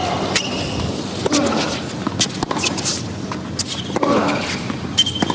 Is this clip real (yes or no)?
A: yes